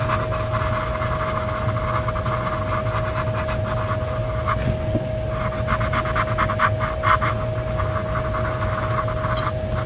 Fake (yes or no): no